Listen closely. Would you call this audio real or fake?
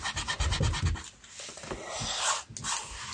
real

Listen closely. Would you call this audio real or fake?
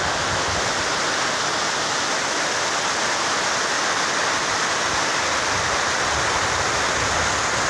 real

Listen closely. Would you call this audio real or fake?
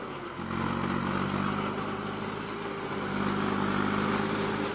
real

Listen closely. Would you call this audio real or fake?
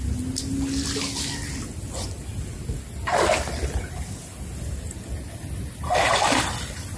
real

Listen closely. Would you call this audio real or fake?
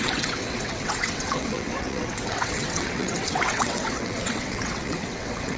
fake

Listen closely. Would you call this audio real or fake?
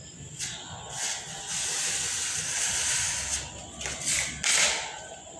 real